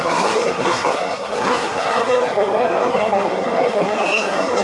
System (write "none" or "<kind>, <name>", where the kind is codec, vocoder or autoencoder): codec, SNAC